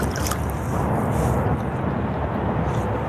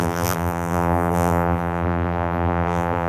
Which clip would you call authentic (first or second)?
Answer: first